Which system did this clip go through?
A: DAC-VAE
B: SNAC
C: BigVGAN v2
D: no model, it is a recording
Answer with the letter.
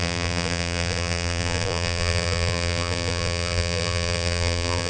C